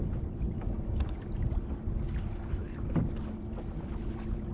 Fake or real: real